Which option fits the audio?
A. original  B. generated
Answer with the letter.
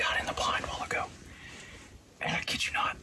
A